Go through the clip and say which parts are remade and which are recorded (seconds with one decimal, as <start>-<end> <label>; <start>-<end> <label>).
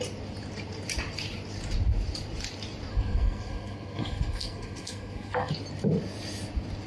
0.0-2.9 recorded; 2.9-5.5 remade; 5.5-6.9 recorded